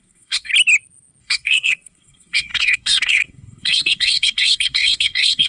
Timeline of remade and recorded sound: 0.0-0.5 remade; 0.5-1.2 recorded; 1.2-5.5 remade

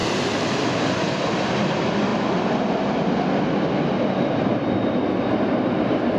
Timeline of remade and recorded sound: 0.0-6.2 recorded